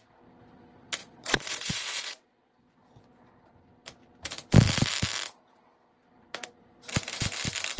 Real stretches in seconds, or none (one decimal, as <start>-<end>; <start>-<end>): 0.0-1.0; 3.3-7.8